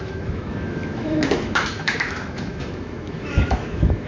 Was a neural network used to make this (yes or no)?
yes